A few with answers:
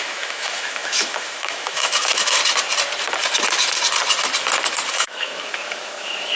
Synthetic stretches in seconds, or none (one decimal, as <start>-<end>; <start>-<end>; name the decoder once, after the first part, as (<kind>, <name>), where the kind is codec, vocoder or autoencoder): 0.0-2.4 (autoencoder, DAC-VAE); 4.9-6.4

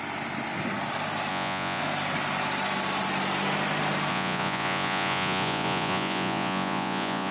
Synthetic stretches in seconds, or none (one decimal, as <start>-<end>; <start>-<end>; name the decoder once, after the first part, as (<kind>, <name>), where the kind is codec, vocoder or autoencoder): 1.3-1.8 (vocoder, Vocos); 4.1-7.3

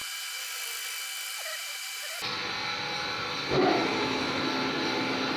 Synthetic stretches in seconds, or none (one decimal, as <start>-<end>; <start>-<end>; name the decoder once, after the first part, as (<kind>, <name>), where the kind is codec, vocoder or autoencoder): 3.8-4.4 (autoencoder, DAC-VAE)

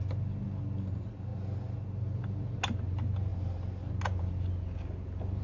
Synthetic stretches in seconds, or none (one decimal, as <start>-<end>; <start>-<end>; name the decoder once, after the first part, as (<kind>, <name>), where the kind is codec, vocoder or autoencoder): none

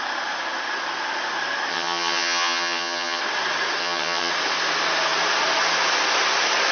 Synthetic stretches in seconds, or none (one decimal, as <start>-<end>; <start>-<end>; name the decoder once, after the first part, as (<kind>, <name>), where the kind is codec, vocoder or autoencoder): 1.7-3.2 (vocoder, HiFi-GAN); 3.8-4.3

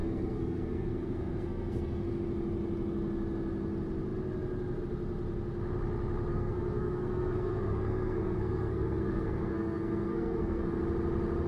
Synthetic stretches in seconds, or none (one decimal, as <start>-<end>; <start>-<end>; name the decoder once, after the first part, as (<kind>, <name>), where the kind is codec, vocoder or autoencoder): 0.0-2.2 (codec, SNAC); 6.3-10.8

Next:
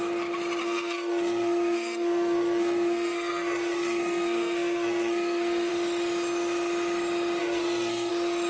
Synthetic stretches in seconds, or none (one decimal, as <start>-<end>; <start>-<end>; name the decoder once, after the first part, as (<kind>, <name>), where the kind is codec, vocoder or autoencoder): 0.6-5.7 (codec, SNAC); 7.4-8.1

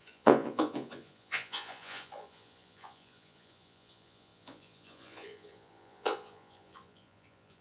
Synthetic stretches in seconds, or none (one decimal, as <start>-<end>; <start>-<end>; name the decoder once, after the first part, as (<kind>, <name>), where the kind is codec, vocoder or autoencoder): 0.0-7.6 (vocoder, Vocos)